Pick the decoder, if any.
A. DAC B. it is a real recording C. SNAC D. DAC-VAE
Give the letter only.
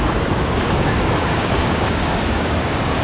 A